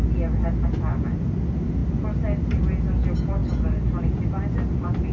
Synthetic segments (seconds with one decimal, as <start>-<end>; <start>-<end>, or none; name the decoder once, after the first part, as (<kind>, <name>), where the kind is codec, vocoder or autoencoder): none